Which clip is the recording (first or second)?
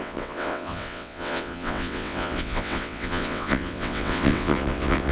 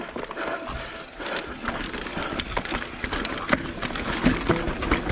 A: second